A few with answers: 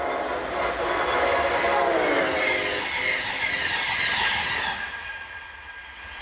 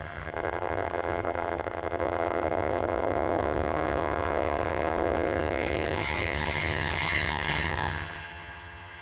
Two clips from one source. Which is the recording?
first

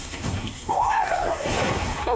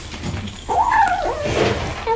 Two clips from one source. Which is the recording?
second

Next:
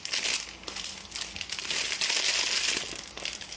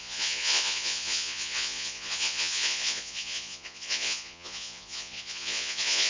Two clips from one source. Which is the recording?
first